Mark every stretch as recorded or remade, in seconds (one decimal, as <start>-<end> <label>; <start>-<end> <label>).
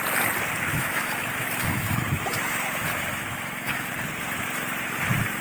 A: 0.0-0.7 recorded; 0.7-3.9 remade; 3.9-5.4 recorded